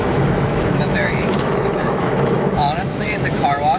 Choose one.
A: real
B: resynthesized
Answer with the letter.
B